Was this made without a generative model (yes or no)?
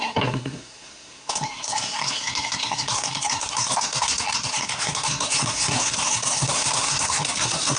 no